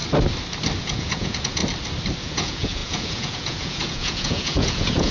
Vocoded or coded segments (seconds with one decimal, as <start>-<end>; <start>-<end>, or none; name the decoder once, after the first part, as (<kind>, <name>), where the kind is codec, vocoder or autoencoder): 0.8-1.6 (vocoder, Vocos); 2.2-5.1